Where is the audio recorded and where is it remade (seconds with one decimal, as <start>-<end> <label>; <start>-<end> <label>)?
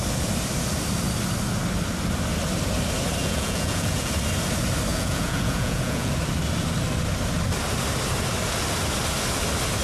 0.0-3.2 recorded; 3.2-4.1 remade; 4.1-4.9 recorded; 4.9-6.1 remade; 6.1-9.8 recorded